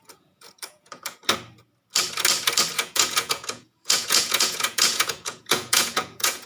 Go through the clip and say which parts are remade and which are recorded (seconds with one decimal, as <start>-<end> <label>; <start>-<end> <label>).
0.0-1.2 remade; 1.2-2.7 recorded; 2.7-6.5 remade